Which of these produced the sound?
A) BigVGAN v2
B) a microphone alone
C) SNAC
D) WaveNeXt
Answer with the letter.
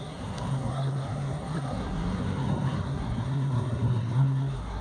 C